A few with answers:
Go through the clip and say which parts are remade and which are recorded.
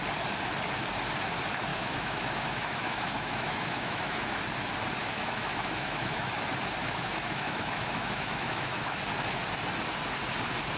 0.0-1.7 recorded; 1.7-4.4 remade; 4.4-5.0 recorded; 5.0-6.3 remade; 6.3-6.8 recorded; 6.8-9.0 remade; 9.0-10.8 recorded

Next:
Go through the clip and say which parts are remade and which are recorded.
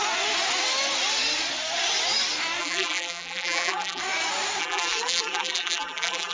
0.0-2.6 recorded; 2.6-4.0 remade; 4.0-4.6 recorded; 4.6-6.3 remade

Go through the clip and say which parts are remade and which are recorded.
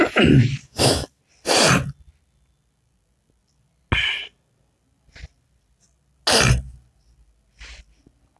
0.0-0.6 recorded; 0.6-1.2 remade; 1.2-8.4 recorded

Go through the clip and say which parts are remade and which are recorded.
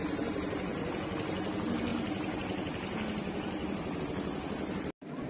0.0-5.3 recorded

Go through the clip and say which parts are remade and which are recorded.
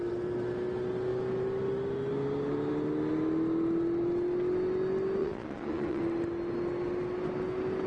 0.0-5.2 recorded; 5.2-6.0 remade; 6.0-7.9 recorded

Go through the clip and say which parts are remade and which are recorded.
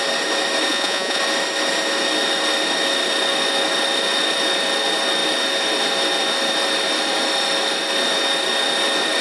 0.0-0.7 recorded; 0.7-1.2 remade; 1.2-9.2 recorded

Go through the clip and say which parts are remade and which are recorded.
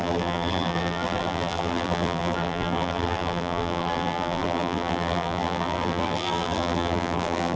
0.0-7.6 remade